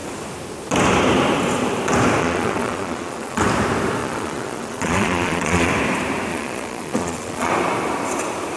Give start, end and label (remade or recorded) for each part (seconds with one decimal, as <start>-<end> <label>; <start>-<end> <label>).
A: 0.0-2.2 recorded; 2.2-3.4 remade; 3.4-4.0 recorded; 4.0-5.7 remade; 5.7-6.3 recorded; 6.3-7.5 remade; 7.5-8.6 recorded